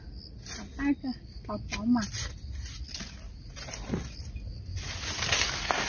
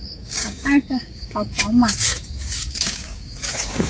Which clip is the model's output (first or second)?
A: second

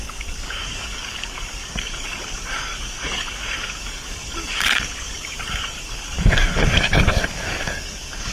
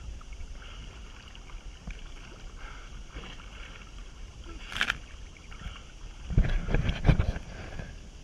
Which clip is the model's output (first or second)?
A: first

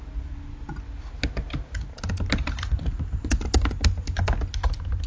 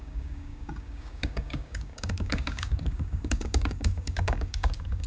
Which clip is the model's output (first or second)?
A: second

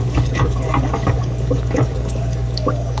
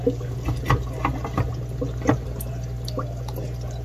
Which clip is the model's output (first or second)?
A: first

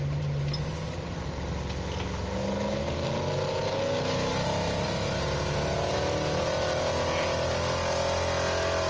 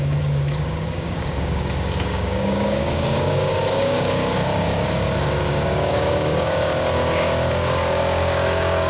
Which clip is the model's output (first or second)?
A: second